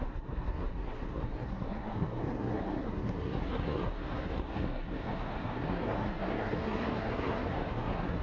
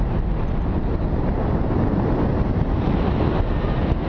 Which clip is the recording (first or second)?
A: second